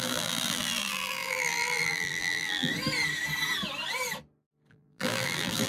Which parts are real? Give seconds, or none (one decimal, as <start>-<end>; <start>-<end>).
2.7-4.7